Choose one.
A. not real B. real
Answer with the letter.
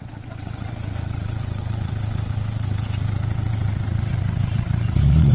A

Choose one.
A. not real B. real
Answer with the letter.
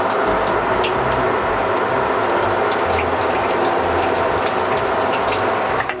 B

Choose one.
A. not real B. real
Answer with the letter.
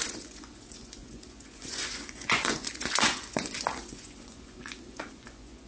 A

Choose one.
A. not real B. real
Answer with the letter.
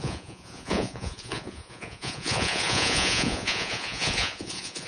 A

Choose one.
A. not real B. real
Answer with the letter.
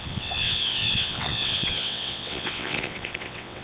A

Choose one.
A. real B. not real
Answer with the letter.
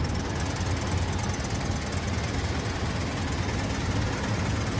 A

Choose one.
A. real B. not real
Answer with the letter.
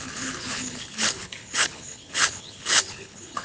B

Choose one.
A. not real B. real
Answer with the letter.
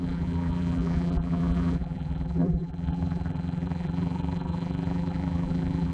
A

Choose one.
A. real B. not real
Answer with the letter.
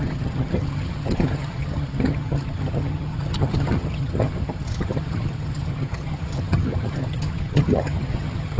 B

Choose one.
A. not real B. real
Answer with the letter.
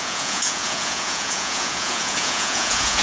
A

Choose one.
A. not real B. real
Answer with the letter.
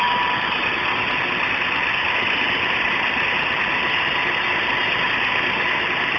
B